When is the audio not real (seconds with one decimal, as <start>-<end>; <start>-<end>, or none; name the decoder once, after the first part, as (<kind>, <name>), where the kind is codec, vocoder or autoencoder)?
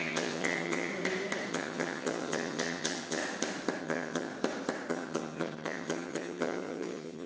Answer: 0.0-0.9 (vocoder, HiFi-GAN); 1.5-3.2; 3.8-4.3; 4.9-7.3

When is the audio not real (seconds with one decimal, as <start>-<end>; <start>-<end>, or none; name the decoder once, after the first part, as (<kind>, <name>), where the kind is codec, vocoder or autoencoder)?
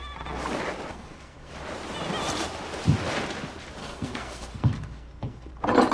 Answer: 0.9-1.5 (codec, SNAC); 3.8-5.5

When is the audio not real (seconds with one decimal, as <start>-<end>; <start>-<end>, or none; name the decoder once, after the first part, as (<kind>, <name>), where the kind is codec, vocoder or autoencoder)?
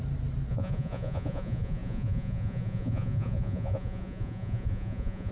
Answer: 0.5-5.3 (vocoder, Vocos)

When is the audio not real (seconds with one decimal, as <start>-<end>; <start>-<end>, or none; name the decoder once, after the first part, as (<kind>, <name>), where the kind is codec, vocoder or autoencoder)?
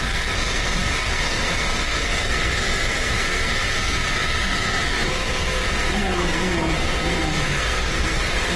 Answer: 0.0-8.6 (codec, SNAC)